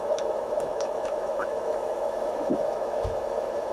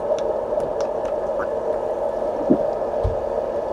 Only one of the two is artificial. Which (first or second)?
first